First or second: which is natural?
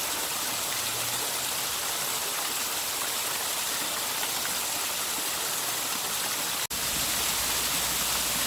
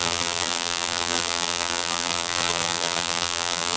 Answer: first